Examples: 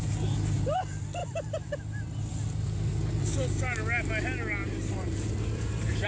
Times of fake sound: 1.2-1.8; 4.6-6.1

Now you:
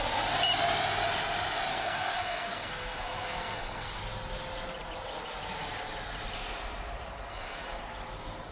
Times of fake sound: 1.7-4.0; 7.3-7.8